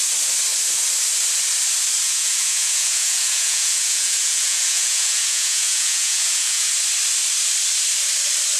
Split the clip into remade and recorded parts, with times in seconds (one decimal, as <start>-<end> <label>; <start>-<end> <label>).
0.0-2.0 recorded; 2.0-6.7 remade; 6.7-8.6 recorded